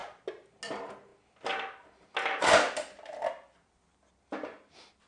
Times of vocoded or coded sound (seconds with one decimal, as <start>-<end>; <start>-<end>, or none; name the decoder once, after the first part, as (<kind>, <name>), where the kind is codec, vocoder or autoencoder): none